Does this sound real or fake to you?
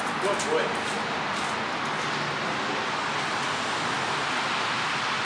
real